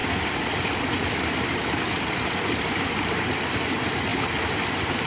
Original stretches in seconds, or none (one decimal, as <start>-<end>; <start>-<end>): 3.1-4.1